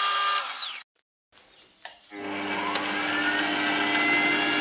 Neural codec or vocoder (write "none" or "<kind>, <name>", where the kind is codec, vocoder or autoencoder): none